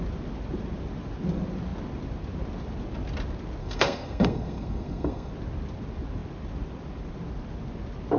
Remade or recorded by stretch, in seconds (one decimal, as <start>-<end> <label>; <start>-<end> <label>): 0.0-3.6 recorded; 3.6-5.3 remade; 5.3-8.2 recorded